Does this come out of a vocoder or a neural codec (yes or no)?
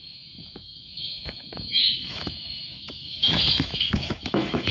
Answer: yes